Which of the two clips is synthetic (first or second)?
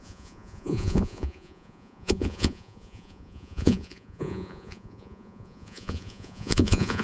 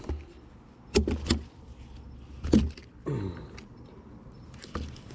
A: first